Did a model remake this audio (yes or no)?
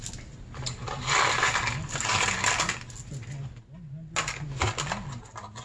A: no